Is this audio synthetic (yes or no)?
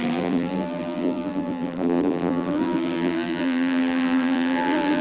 yes